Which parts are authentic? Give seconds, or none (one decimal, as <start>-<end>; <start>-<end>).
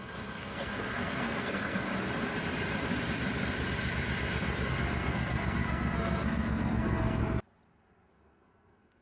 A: 1.9-4.7; 7.2-8.1